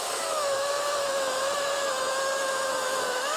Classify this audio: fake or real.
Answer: fake